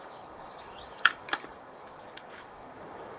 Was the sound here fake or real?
fake